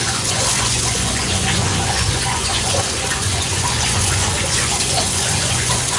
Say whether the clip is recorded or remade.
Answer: remade